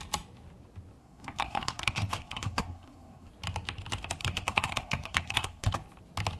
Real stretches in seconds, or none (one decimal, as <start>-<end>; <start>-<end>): 0.0-1.0; 3.3-4.2; 5.7-6.4